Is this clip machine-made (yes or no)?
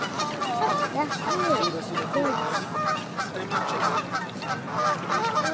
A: no